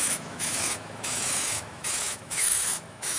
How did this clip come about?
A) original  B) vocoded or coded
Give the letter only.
B